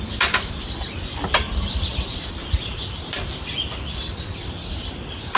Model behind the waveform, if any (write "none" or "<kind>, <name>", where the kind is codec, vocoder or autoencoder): vocoder, BigVGAN v2